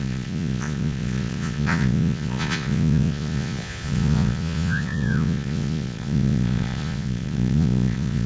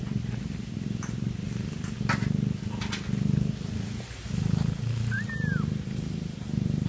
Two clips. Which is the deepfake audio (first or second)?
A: first